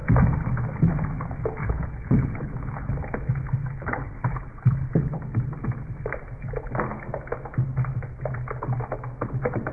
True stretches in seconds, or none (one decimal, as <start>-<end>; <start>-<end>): 0.0-1.6; 2.9-3.6; 5.2-9.7